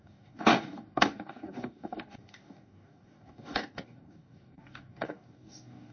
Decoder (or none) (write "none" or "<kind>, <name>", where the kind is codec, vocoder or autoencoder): codec, DAC